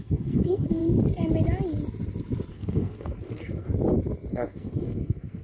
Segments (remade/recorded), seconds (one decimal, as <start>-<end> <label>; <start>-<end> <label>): 0.0-0.8 remade; 0.8-2.5 recorded; 2.5-3.7 remade; 3.7-4.3 recorded; 4.3-5.4 remade